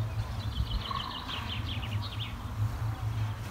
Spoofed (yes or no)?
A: no